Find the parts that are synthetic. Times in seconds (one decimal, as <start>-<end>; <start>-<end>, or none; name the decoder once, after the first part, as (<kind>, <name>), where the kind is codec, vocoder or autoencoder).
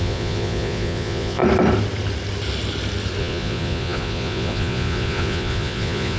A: 0.0-1.4 (vocoder, Vocos); 3.2-6.2